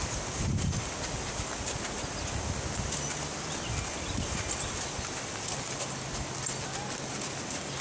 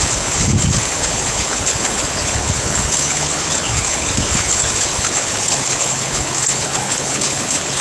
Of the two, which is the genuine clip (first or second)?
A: first